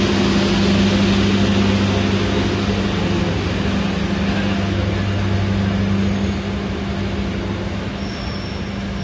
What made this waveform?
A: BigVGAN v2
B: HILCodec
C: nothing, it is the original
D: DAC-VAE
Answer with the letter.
C